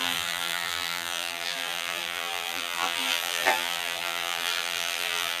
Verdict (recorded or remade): remade